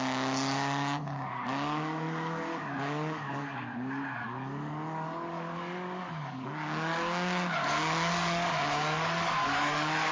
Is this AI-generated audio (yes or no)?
yes